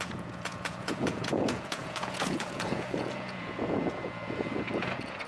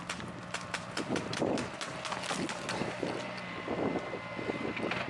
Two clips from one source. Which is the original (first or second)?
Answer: second